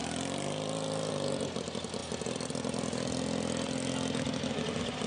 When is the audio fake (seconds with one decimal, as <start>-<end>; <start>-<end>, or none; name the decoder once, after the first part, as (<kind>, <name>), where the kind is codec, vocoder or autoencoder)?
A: 0.0-1.1 (vocoder, BigVGAN v2)